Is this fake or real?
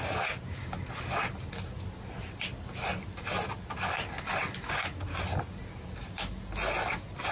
real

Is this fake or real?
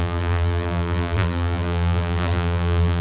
fake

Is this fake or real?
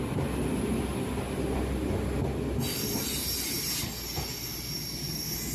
real